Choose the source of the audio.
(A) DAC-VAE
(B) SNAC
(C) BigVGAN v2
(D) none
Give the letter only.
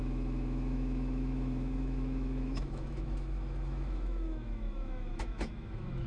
A